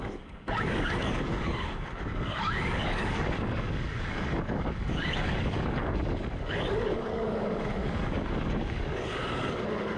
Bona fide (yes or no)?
no